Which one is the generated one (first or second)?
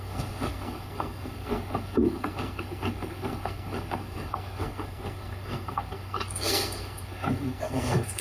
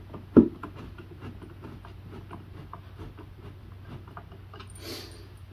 first